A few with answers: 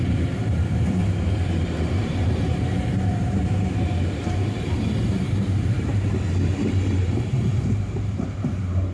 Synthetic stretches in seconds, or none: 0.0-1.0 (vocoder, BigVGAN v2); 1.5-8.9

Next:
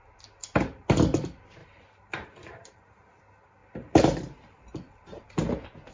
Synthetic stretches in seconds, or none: 1.6-3.2 (vocoder, BigVGAN v2); 3.6-5.5

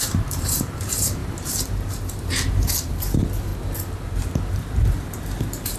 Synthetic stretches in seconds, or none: 0.0-3.5 (vocoder, BigVGAN v2); 4.5-5.8

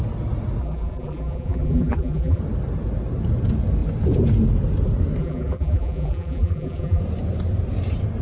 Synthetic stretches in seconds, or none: 0.6-2.4 (vocoder, BigVGAN v2); 5.2-7.0

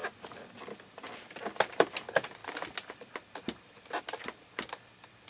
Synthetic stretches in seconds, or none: none

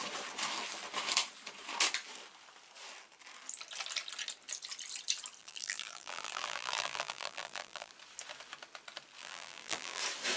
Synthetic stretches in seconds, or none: 5.4-7.9 (vocoder, BigVGAN v2); 9.2-10.0

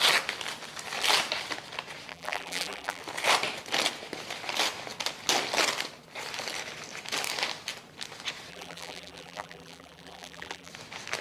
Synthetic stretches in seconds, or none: 2.1-3.0 (vocoder, BigVGAN v2); 8.5-10.7